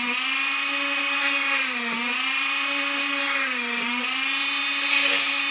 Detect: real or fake real